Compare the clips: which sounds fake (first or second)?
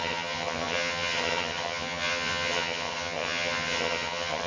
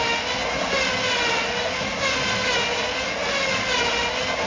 first